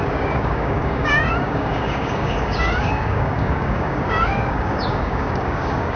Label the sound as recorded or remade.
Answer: remade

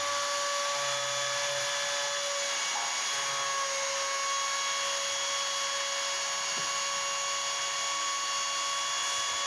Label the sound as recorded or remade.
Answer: recorded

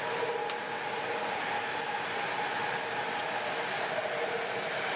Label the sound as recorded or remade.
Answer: recorded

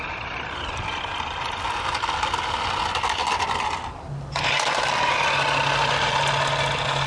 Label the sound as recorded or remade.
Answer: recorded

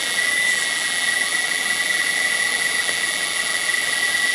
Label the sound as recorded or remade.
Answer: remade